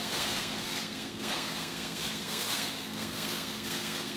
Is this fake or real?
fake